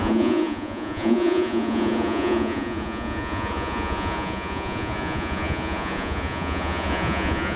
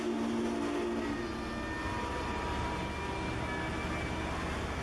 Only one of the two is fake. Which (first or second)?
first